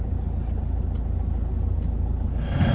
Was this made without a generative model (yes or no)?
yes